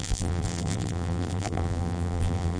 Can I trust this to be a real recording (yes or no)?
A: no